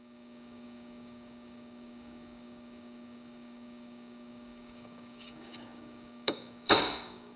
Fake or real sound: fake